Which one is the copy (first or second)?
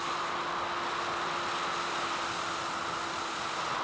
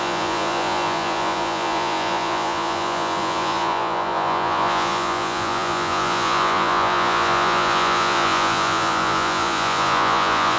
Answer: second